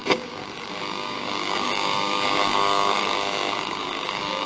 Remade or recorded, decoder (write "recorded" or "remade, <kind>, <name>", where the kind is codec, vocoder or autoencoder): remade, codec, DAC